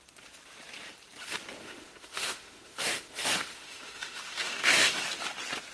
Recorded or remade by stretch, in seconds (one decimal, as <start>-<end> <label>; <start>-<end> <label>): 0.0-1.6 recorded; 1.6-5.0 remade; 5.0-5.7 recorded